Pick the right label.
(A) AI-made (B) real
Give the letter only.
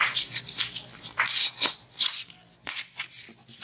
B